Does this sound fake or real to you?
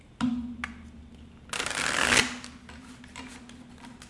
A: real